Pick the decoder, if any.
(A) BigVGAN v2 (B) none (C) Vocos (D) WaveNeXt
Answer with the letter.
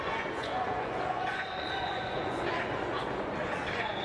C